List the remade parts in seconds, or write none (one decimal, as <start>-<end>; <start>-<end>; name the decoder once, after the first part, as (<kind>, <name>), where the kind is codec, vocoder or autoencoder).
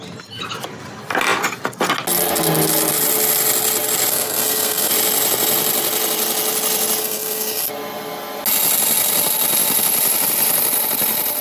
4.1-4.9 (codec, SNAC); 7.0-7.7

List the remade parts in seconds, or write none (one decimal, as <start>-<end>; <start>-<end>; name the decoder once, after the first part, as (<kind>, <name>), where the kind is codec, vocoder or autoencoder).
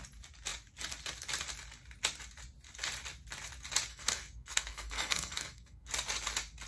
3.9-5.9 (codec, SNAC)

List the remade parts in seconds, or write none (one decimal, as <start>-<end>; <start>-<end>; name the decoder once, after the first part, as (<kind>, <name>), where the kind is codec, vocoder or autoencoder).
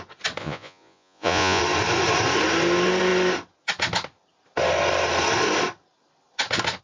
0.4-1.6 (vocoder, Vocos)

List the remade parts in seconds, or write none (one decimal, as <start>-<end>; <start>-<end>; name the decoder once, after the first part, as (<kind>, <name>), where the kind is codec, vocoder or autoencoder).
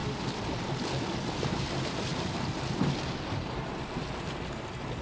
none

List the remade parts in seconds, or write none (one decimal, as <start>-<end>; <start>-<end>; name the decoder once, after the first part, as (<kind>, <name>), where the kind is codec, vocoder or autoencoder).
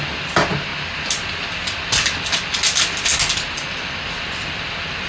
none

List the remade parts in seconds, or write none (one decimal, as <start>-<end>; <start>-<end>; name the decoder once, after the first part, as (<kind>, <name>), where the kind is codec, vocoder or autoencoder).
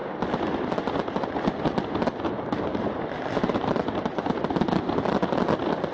2.7-4.6 (vocoder, BigVGAN v2)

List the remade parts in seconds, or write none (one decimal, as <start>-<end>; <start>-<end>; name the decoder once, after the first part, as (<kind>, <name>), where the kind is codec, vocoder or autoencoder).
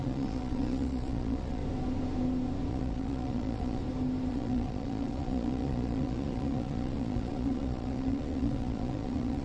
0.0-1.6 (vocoder, Vocos); 2.7-3.8; 4.3-9.4